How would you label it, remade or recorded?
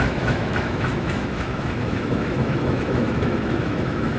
remade